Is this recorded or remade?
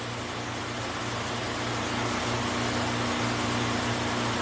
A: recorded